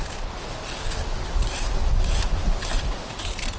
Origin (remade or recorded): recorded